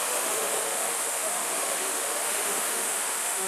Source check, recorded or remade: remade